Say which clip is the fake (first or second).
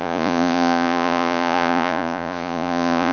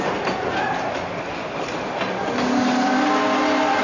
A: first